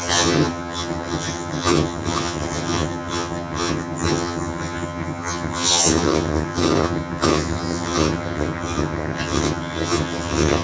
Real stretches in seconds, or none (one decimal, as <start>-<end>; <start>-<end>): none